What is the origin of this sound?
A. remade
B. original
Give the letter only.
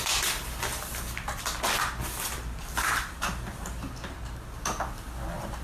B